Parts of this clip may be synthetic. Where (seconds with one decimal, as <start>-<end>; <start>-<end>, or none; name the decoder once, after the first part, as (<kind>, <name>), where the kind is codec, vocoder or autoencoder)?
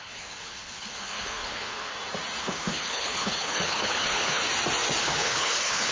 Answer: 0.0-1.9 (codec, HILCodec); 2.4-4.4; 5.0-5.9